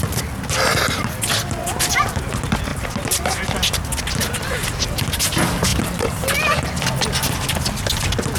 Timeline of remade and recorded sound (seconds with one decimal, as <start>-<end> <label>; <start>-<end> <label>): 0.0-8.4 recorded